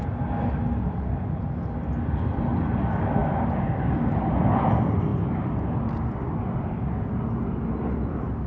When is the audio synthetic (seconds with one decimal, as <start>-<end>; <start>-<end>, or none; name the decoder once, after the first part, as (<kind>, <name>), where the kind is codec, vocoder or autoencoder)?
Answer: none